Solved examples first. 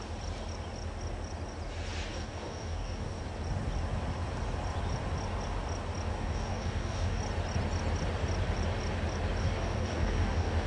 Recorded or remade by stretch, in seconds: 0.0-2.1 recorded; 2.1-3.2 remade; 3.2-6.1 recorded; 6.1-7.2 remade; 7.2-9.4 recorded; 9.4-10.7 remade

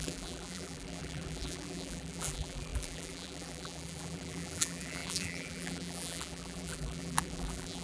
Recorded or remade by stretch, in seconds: 0.0-7.8 remade

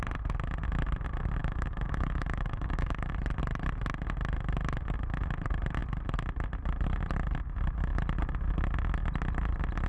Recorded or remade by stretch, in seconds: 0.0-1.4 recorded; 1.4-3.1 remade; 3.1-9.9 recorded

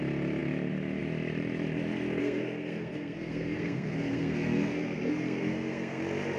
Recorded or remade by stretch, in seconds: 0.0-2.2 recorded; 2.2-6.0 remade; 6.0-6.4 recorded

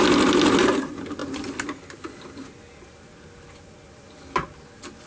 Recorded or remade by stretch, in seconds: 0.0-5.1 recorded

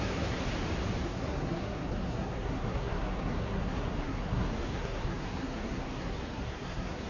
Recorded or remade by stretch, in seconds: 0.0-0.4 remade; 0.4-1.0 recorded; 1.0-7.1 remade

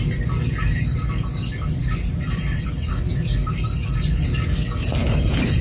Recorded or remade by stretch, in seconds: 0.0-0.9 recorded; 0.9-3.9 remade; 3.9-5.0 recorded; 5.0-5.6 remade

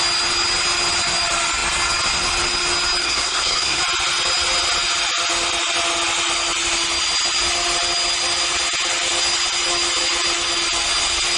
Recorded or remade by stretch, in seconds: 0.0-3.0 recorded; 3.0-3.8 remade; 3.8-11.4 recorded